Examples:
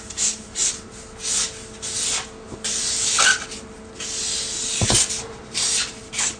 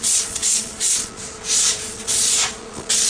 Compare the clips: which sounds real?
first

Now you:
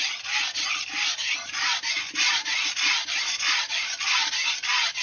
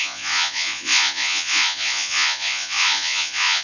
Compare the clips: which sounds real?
first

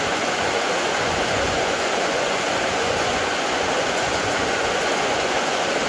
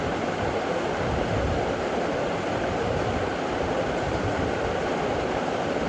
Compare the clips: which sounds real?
second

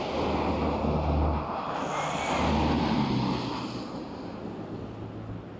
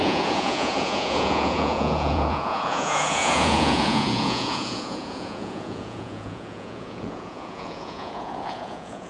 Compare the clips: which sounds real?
first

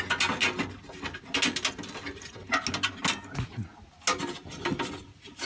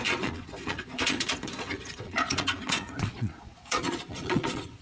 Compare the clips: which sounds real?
first